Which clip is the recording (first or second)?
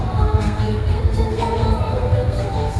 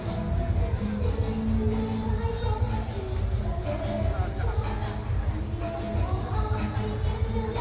second